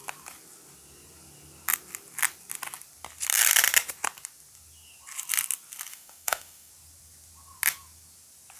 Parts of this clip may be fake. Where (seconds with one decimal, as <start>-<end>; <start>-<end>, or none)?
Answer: 5.9-6.7